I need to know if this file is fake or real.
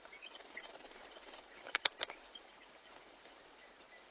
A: fake